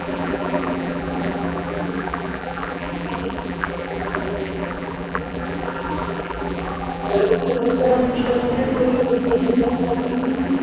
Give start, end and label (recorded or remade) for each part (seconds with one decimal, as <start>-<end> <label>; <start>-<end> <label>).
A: 0.0-7.9 remade; 7.9-9.0 recorded; 9.0-10.6 remade